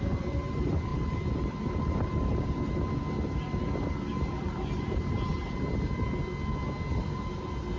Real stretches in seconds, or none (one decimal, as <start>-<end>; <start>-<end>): 5.3-6.9